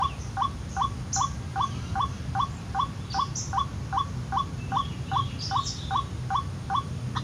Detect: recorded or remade recorded